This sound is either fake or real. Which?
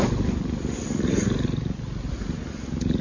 real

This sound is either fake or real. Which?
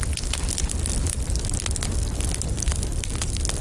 real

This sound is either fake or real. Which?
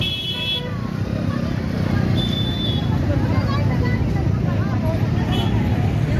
real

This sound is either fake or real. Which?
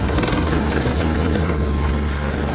fake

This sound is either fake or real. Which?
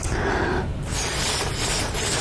real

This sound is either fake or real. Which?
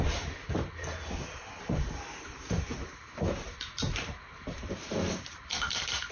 fake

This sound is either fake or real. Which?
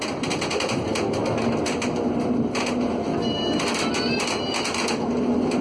real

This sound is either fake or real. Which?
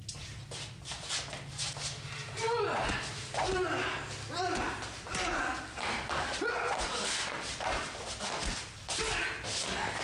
real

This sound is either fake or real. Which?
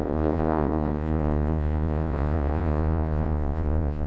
fake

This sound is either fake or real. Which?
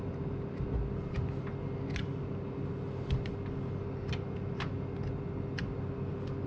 real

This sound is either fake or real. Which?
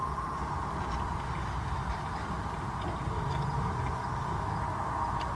real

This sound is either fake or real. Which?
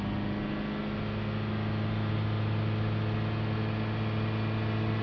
real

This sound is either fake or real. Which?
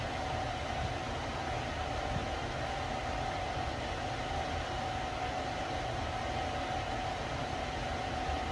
real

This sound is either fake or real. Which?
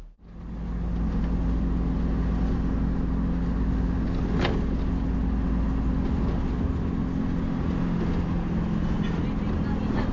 real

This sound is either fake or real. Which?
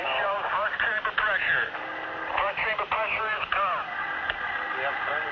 real